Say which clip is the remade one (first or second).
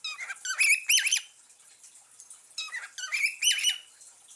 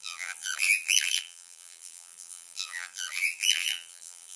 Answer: second